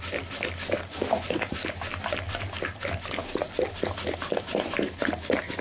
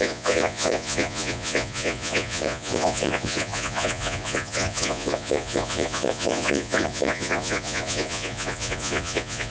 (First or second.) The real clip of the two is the first